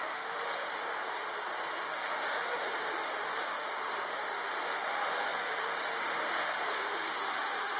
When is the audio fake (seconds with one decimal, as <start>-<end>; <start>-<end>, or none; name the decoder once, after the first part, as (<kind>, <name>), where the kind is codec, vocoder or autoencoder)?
0.0-0.9 (autoencoder, DAC-VAE); 1.8-7.8